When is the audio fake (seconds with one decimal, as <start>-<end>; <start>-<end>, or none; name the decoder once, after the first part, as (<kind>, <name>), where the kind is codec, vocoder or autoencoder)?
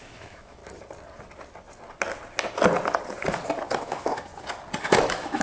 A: 0.0-0.6 (autoencoder, DAC-VAE); 3.8-4.3; 4.8-5.4